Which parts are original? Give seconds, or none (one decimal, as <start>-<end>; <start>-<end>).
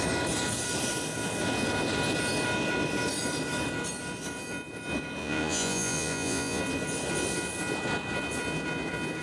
0.0-5.2; 6.6-9.2